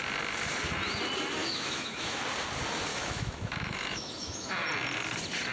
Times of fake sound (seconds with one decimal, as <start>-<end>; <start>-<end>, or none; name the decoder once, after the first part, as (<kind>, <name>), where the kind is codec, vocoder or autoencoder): 1.4-2.2 (autoencoder, DAC-VAE); 2.9-4.5